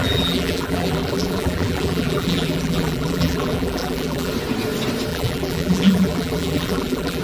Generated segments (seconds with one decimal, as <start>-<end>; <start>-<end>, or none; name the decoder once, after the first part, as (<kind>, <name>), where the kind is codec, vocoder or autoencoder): 0.0-4.3 (vocoder, BigVGAN v2); 5.1-7.2

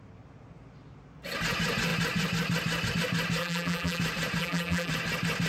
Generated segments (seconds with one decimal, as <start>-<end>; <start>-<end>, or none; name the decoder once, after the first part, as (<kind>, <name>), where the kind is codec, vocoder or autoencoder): 3.4-4.0 (vocoder, BigVGAN v2); 4.4-4.9

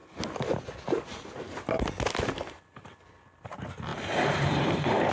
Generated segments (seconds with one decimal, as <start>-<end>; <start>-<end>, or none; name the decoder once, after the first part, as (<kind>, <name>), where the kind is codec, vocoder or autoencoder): 3.9-5.1 (vocoder, BigVGAN v2)

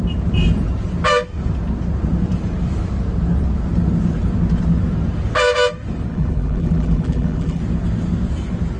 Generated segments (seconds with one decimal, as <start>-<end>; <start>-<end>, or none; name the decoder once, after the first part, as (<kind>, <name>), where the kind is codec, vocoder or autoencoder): 6.1-7.6 (vocoder, BigVGAN v2)